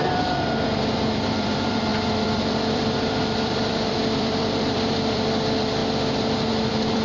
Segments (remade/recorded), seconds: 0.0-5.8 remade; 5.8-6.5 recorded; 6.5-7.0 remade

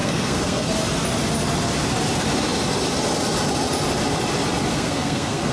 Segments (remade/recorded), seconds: 0.0-0.7 remade; 0.7-4.7 recorded; 4.7-5.5 remade

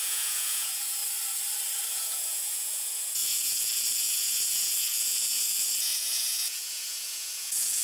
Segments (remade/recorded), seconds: 0.0-1.0 remade; 1.0-1.9 recorded; 1.9-7.8 remade